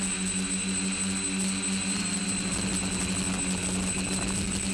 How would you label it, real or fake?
real